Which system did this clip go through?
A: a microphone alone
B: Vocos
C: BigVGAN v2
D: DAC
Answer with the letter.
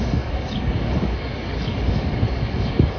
D